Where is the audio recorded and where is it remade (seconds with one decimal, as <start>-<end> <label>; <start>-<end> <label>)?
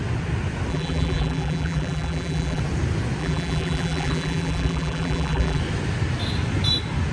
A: 0.0-0.7 recorded; 0.7-2.6 remade; 2.6-3.2 recorded; 3.2-5.6 remade; 5.6-7.1 recorded